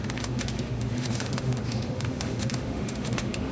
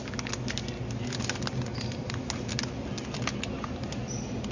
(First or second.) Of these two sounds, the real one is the second